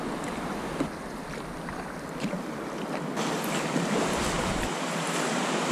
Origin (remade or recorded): recorded